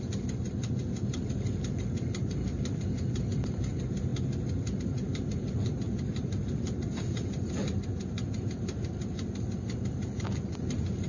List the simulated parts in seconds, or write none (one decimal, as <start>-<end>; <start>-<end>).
0.0-4.1; 4.8-11.1